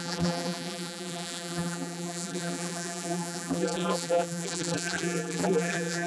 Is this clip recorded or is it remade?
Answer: remade